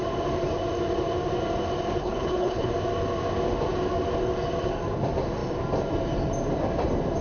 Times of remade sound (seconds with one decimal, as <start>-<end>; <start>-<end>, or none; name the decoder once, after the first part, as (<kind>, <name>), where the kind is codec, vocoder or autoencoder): 2.0-2.7 (codec, HILCodec)